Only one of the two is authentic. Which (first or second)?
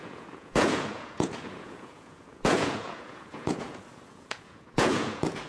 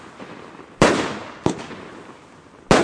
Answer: second